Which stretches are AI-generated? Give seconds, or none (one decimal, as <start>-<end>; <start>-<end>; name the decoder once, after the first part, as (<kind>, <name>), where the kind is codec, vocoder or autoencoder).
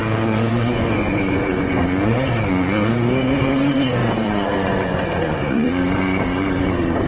0.0-7.1 (vocoder, Vocos)